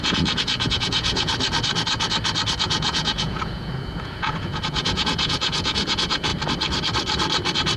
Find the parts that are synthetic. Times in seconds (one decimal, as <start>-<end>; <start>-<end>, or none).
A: 0.0-1.3; 2.6-6.3